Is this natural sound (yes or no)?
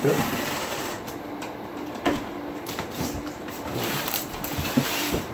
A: no